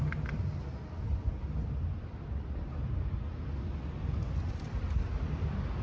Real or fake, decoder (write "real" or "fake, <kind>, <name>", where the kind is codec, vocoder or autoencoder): real